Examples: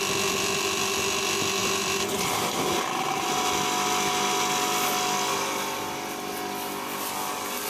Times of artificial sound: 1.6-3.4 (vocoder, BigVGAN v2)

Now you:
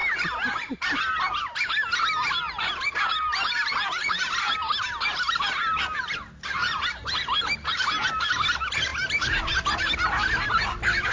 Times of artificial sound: 0.0-2.0 (vocoder, BigVGAN v2); 2.6-4.5

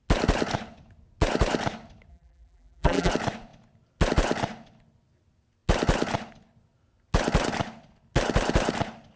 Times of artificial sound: 2.1-3.1 (vocoder, BigVGAN v2)

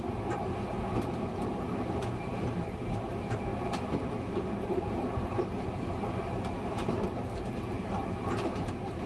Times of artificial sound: 0.0-9.1 (vocoder, BigVGAN v2)

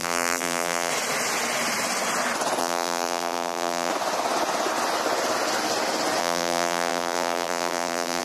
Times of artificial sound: 0.0-0.9 (vocoder, BigVGAN v2); 2.6-3.9; 6.2-8.2